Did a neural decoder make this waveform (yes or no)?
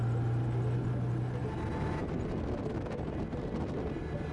no